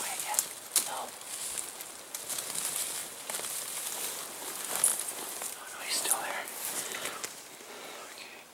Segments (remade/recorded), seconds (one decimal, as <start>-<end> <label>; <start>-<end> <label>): 0.0-4.9 recorded; 4.9-5.8 remade; 5.8-8.5 recorded